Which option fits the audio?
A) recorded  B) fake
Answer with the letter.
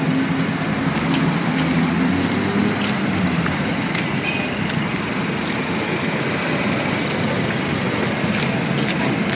A